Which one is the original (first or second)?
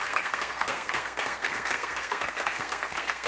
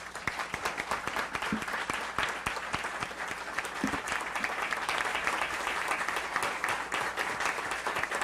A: second